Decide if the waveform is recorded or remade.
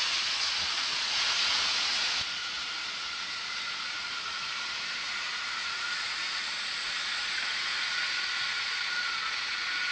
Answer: remade